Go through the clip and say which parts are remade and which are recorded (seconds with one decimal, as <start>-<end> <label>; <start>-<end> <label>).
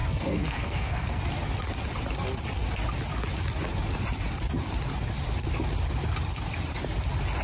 0.0-1.2 remade; 1.2-7.4 recorded